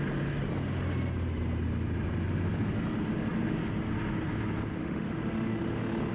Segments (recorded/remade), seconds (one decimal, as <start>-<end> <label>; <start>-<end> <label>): 0.0-4.8 recorded; 4.8-6.1 remade